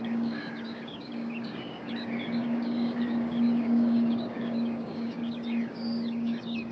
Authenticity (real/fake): fake